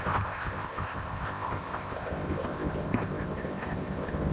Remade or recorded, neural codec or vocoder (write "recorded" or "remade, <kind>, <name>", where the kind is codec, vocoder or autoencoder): remade, codec, ZipCodec